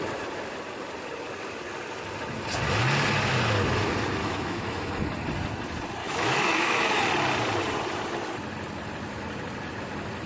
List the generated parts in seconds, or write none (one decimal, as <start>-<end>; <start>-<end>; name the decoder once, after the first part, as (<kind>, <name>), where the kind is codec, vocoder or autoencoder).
4.2-4.9 (autoencoder, DAC-VAE); 6.0-7.0